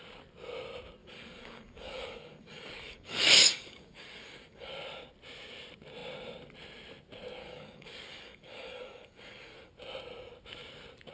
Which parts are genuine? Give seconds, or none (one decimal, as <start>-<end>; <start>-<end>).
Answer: 0.0-1.0; 4.7-7.4; 9.7-11.1